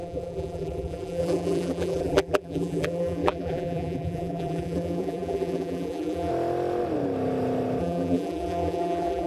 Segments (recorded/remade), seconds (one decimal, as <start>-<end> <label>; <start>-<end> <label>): 0.0-6.3 remade; 6.3-7.8 recorded; 7.8-9.3 remade